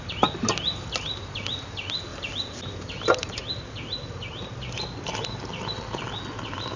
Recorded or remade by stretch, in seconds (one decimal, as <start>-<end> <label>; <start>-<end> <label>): 0.0-6.8 recorded